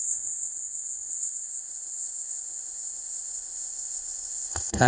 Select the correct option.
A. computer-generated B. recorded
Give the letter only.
A